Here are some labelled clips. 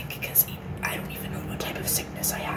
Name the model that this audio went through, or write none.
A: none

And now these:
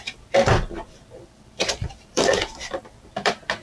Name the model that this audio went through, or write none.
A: vocoder, BigVGAN v2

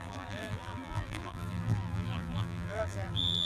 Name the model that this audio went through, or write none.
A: vocoder, BigVGAN v2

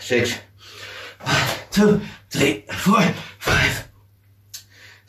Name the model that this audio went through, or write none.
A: none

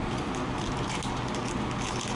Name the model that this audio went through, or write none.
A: none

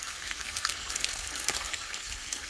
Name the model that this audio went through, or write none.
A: codec, SNAC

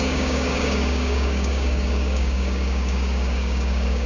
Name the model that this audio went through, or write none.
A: codec, DAC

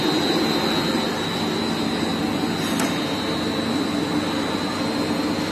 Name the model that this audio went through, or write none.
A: none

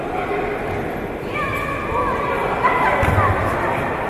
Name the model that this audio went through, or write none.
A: vocoder, BigVGAN v2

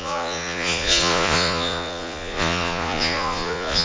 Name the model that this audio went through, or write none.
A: vocoder, Vocos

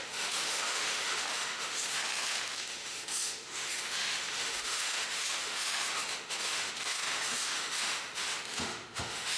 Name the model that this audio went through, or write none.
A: autoencoder, DAC-VAE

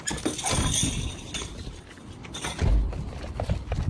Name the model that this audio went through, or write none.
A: none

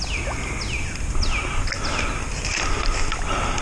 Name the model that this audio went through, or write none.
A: none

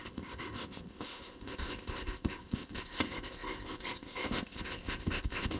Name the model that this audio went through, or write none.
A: codec, ZipCodec